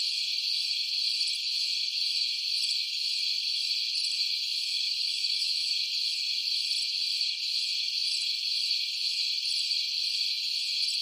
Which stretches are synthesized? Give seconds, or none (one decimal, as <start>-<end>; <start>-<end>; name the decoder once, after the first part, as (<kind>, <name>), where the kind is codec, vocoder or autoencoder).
4.7-5.7 (autoencoder, DAC-VAE)